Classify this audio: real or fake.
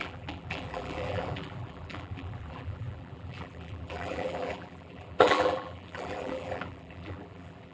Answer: fake